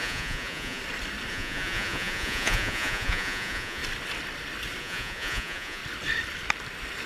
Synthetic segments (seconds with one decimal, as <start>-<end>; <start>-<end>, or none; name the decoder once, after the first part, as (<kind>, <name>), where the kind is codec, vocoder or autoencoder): 0.0-0.8 (vocoder, Vocos); 1.3-3.8; 4.8-5.8